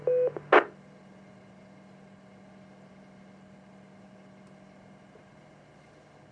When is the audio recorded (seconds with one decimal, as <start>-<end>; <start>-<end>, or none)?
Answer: 0.0-6.3